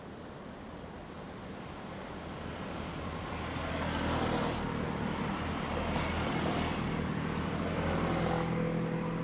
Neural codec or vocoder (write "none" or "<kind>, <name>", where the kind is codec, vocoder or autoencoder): none